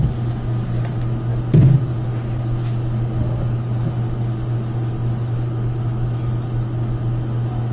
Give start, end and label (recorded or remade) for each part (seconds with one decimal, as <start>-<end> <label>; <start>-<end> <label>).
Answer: 0.0-7.7 recorded

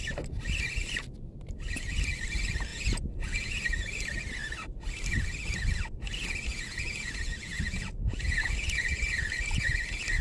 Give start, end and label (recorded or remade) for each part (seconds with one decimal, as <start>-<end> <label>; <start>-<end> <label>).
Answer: 0.0-2.7 recorded; 2.7-3.5 remade; 3.5-6.5 recorded; 6.5-9.0 remade; 9.0-10.2 recorded